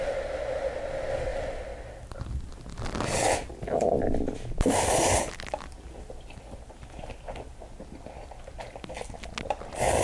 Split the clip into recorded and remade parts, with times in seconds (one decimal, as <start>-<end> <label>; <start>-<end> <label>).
0.0-10.0 recorded